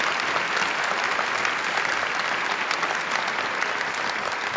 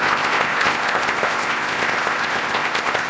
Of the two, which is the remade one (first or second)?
second